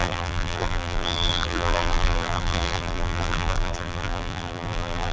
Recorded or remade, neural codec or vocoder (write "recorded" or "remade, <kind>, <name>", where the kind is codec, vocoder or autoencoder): remade, vocoder, BigVGAN v2